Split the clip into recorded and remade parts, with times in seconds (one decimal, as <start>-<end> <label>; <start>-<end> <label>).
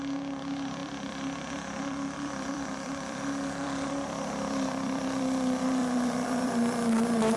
0.0-0.8 recorded; 0.8-5.2 remade; 5.2-5.8 recorded; 5.8-6.6 remade; 6.6-7.4 recorded